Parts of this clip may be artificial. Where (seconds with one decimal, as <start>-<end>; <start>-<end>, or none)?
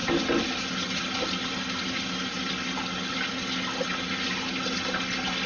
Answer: none